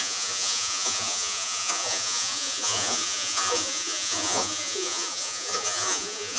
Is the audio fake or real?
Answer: fake